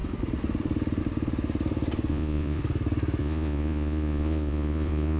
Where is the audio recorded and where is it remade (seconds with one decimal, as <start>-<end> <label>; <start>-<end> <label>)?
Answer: 0.0-2.1 recorded; 2.1-2.6 remade; 2.6-3.2 recorded; 3.2-5.2 remade